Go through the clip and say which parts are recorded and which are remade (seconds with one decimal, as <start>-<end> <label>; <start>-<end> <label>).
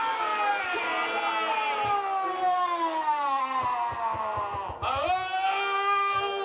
0.0-2.4 recorded; 2.4-3.6 remade; 3.6-6.4 recorded